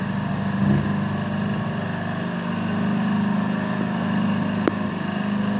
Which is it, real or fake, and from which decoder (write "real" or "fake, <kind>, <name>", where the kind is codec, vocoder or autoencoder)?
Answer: real